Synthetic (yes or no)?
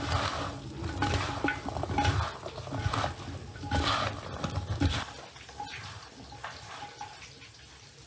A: no